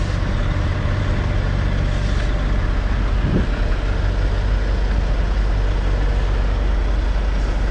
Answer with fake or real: real